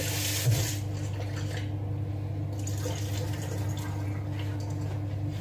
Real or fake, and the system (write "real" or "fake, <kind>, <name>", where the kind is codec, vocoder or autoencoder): real